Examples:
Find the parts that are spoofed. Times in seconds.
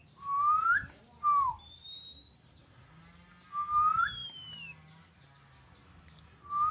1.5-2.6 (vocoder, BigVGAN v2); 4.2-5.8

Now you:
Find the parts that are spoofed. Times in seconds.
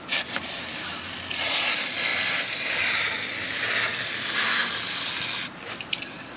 2.1-2.6 (vocoder, BigVGAN v2)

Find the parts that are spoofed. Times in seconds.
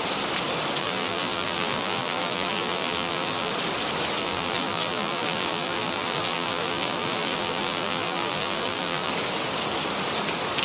0.8-3.5 (vocoder, BigVGAN v2); 4.2-9.1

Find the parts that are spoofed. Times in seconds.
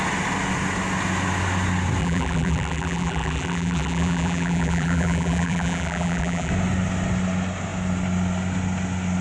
2.0-6.5 (vocoder, BigVGAN v2)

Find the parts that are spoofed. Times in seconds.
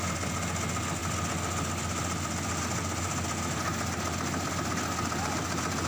none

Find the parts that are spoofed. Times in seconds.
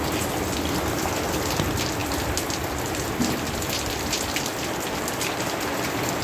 none